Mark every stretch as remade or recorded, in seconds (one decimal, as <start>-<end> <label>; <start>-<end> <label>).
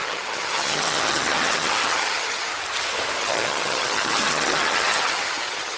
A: 0.0-2.5 remade; 2.5-3.2 recorded; 3.2-5.8 remade